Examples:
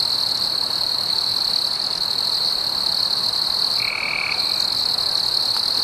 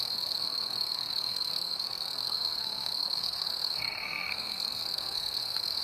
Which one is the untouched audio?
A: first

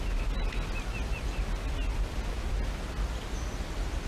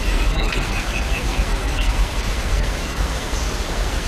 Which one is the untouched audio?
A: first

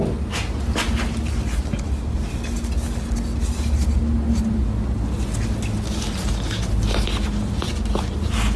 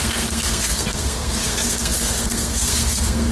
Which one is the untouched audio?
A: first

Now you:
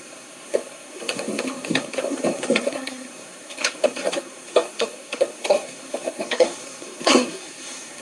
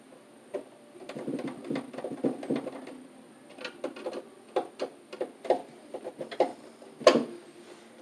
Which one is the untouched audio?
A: second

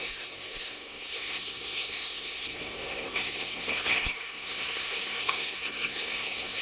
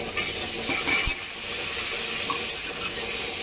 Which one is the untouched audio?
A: second